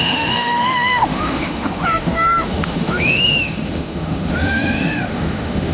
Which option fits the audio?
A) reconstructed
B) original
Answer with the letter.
A